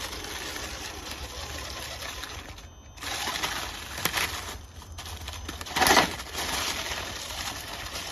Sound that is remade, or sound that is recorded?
recorded